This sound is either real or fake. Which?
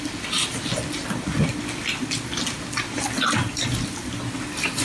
real